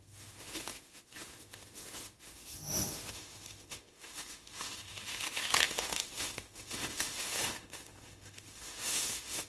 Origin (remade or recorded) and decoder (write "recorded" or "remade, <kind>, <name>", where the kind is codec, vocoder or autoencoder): remade, autoencoder, DAC-VAE